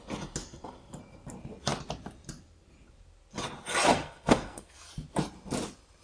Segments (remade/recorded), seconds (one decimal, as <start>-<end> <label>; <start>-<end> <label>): 0.0-3.9 recorded; 3.9-4.9 remade; 4.9-6.0 recorded